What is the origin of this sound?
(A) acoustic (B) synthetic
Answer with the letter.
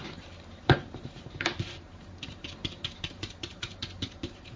B